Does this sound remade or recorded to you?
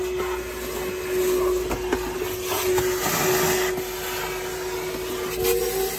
recorded